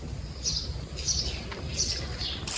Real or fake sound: real